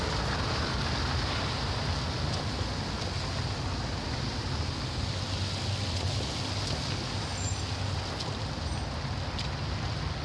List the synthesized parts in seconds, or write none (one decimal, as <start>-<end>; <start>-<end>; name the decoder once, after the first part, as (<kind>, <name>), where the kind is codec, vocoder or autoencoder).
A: none